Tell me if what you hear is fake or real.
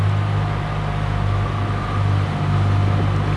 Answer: real